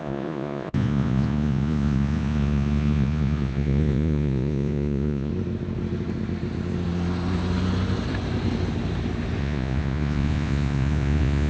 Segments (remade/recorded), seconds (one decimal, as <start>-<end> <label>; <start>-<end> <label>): 0.0-5.3 remade; 5.3-9.4 recorded; 9.4-11.5 remade

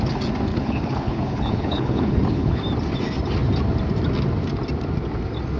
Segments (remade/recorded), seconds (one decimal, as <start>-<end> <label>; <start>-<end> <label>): 0.0-0.5 recorded; 0.5-2.6 remade; 2.6-5.6 recorded

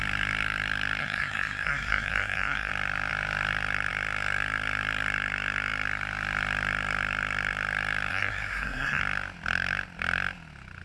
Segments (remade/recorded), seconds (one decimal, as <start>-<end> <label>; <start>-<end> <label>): 0.0-1.0 recorded; 1.0-2.7 remade; 2.7-8.1 recorded; 8.1-9.0 remade; 9.0-10.8 recorded

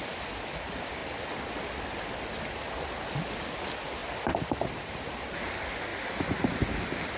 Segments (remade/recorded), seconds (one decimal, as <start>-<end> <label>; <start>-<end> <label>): 0.0-4.0 recorded; 4.0-5.5 remade; 5.5-5.9 recorded; 5.9-6.5 remade; 6.5-7.2 recorded

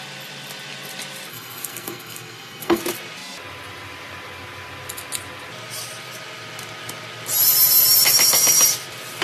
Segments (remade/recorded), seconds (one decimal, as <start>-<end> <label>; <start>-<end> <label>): 0.0-1.3 recorded; 1.3-2.8 remade; 2.8-9.2 recorded

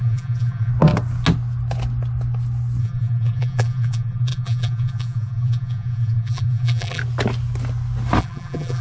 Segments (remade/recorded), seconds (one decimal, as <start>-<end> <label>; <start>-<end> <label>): 0.0-0.7 remade; 0.7-2.8 recorded; 2.8-7.0 remade; 7.0-8.2 recorded; 8.2-8.8 remade

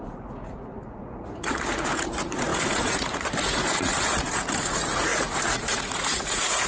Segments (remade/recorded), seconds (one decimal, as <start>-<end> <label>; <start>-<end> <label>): 0.0-6.7 remade

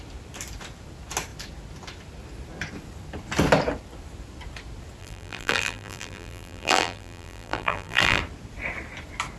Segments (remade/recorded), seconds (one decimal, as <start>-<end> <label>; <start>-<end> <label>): 0.0-5.0 recorded; 5.0-8.2 remade; 8.2-9.4 recorded